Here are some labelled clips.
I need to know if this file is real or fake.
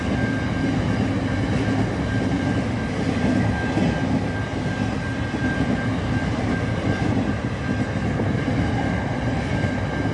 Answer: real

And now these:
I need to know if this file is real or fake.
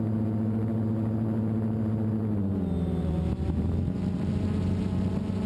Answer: real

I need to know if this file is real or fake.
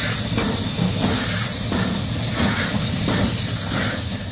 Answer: real